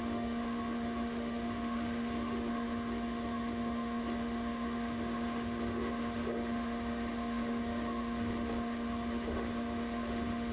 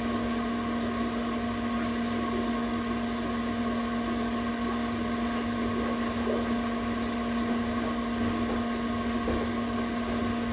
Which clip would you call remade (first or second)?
first